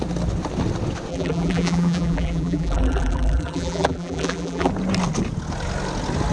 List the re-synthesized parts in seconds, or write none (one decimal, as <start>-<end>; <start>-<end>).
1.1-4.7